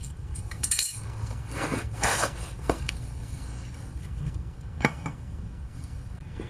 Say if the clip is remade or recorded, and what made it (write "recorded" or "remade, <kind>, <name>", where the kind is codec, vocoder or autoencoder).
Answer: remade, codec, SNAC